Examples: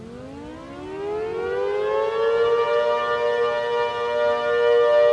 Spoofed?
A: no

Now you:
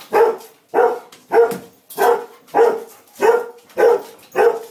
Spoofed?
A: no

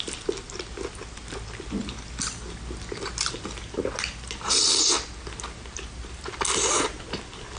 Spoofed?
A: no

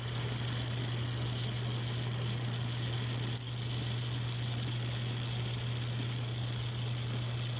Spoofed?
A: yes